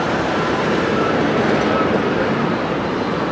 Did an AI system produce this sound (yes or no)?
yes